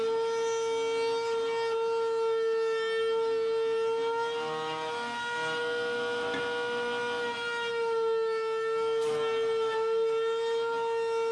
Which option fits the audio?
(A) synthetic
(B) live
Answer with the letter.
B